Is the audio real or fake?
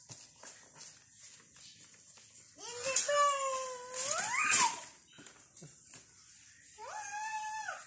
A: real